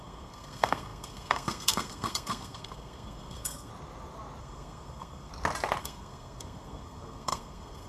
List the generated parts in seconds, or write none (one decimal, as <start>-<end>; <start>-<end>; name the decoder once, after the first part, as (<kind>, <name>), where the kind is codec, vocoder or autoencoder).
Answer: 0.0-3.7 (codec, SNAC); 4.4-5.3; 5.8-7.9